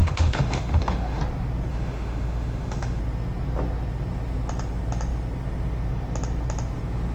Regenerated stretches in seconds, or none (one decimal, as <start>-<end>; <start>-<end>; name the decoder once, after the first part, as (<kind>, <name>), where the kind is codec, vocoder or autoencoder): 0.0-1.2 (autoencoder, DAC-VAE); 1.7-3.0